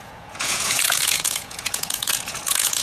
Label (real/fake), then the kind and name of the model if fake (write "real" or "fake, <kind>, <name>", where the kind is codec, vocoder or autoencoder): fake, vocoder, Vocos